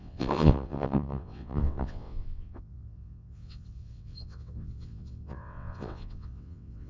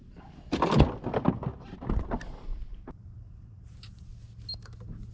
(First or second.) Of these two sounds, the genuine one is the second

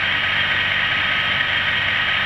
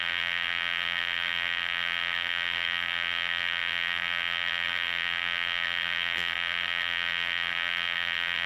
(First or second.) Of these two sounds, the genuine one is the first